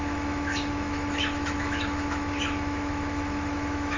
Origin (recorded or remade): remade